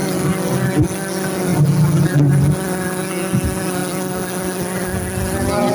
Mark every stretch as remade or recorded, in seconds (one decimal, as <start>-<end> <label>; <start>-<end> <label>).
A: 0.0-5.7 recorded